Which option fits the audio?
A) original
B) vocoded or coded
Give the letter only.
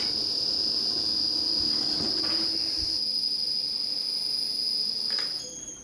A